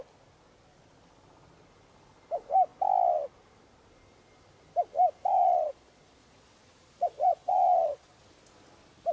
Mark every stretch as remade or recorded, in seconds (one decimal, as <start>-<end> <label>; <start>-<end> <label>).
0.0-5.3 recorded; 5.3-8.2 remade; 8.2-9.1 recorded